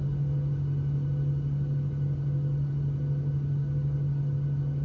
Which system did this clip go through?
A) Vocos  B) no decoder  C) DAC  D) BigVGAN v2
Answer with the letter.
B